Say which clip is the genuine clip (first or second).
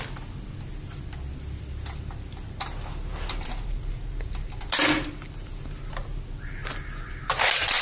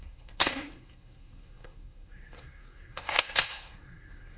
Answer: first